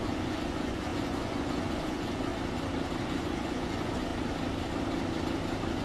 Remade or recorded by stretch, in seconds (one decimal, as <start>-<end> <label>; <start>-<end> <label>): 0.0-2.3 remade; 2.3-3.0 recorded; 3.0-4.1 remade; 4.1-5.8 recorded